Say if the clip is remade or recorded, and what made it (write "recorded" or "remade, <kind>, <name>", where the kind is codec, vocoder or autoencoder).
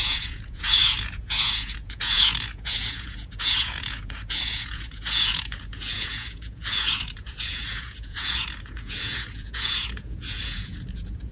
remade, vocoder, Vocos